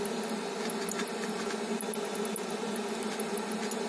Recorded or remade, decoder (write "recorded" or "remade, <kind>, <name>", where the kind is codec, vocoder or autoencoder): recorded